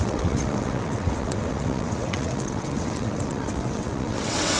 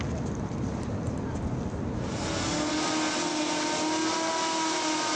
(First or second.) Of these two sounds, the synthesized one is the first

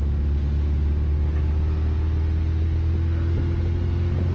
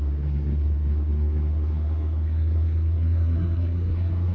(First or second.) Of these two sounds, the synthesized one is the second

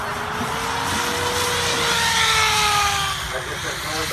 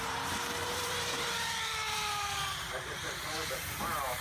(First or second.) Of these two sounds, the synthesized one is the second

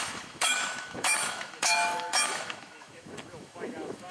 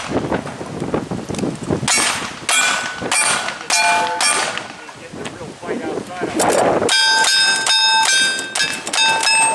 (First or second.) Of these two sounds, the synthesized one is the first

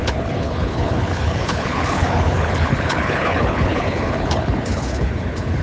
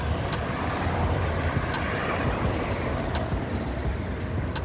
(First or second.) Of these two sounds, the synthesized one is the first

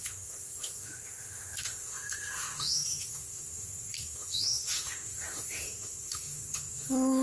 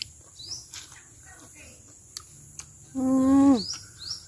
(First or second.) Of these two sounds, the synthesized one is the first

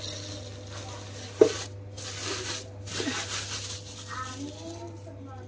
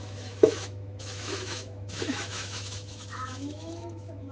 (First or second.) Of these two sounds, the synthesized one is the second